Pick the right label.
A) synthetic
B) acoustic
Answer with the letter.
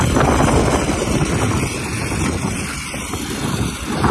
B